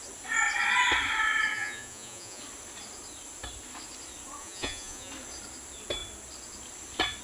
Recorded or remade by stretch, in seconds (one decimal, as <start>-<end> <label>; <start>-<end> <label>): 0.0-1.5 recorded; 1.5-2.4 remade; 2.4-4.4 recorded; 4.4-5.1 remade; 5.1-7.2 recorded